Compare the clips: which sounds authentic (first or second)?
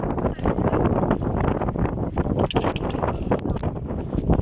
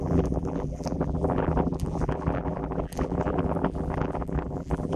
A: first